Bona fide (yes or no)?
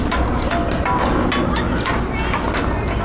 yes